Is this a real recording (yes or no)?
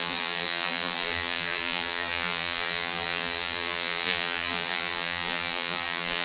no